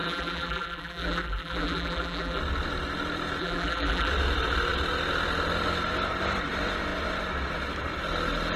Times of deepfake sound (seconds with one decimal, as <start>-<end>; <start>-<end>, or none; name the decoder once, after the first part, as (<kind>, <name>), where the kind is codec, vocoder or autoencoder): 0.0-2.4 (vocoder, BigVGAN v2); 3.4-4.1